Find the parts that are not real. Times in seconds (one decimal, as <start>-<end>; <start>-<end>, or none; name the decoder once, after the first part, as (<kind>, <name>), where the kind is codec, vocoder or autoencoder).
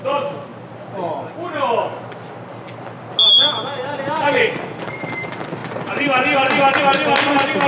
5.6-6.8 (vocoder, BigVGAN v2)